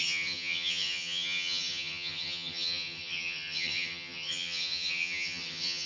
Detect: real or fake fake